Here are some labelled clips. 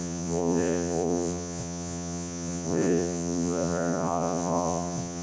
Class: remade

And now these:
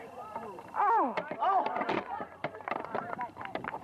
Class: remade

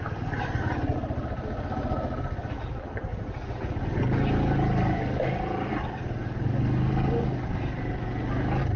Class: recorded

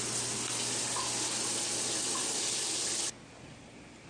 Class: recorded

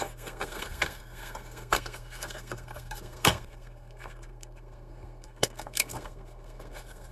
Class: remade